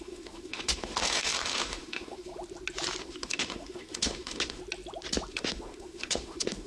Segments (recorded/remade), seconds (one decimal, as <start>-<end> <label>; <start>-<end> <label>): 0.0-2.3 remade; 2.3-3.0 recorded; 3.0-4.6 remade; 4.6-5.3 recorded; 5.3-6.7 remade